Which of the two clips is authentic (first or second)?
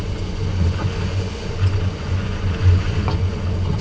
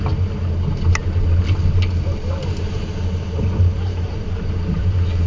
second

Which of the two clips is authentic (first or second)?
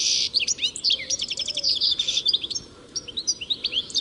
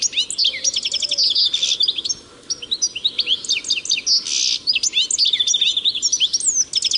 second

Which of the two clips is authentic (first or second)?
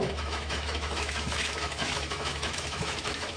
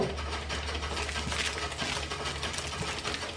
second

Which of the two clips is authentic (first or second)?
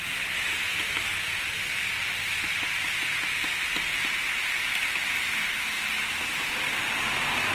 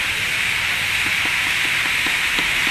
first